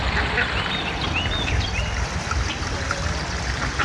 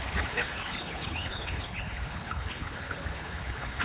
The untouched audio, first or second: first